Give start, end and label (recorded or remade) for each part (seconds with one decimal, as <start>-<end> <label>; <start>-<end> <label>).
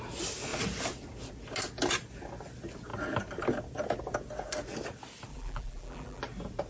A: 0.0-5.3 recorded; 5.3-6.2 remade; 6.2-6.7 recorded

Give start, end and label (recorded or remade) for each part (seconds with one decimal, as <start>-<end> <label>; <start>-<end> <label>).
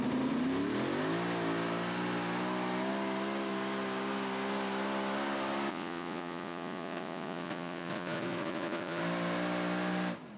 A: 0.0-5.7 recorded; 5.7-9.0 remade; 9.0-10.4 recorded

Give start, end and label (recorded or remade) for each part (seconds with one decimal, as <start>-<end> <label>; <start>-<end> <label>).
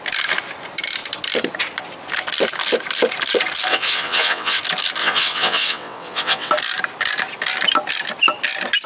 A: 0.0-3.7 recorded; 3.7-4.6 remade; 4.6-5.0 recorded; 5.0-6.5 remade; 6.5-8.9 recorded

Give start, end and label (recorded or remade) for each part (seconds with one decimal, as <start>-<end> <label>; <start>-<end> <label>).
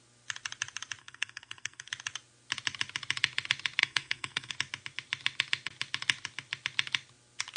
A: 0.0-1.0 recorded; 1.0-1.9 remade; 1.9-3.8 recorded; 3.8-4.5 remade; 4.5-7.6 recorded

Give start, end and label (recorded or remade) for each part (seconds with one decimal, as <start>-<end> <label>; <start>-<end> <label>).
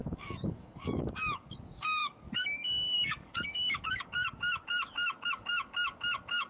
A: 0.0-6.5 remade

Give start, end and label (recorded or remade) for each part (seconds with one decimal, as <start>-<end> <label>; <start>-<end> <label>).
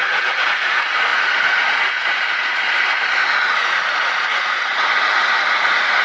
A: 0.0-6.0 remade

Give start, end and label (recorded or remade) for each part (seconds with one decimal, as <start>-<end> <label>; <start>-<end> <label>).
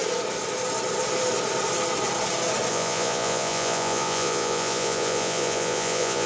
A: 0.0-2.7 recorded; 2.7-6.3 remade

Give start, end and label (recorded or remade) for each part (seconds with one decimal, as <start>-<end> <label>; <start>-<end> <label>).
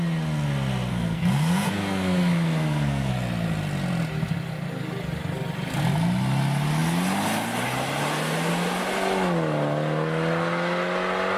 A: 0.0-0.9 recorded; 0.9-3.1 remade; 3.1-11.4 recorded